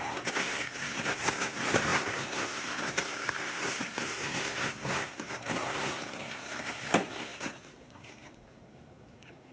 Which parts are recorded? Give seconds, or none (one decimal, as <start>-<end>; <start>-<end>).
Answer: none